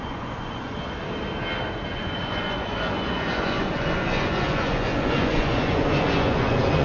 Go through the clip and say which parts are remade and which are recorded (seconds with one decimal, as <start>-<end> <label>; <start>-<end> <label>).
0.0-0.7 remade; 0.7-1.9 recorded; 1.9-6.8 remade